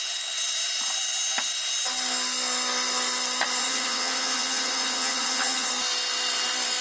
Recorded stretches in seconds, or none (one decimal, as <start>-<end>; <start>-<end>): 0.0-3.6; 5.7-6.8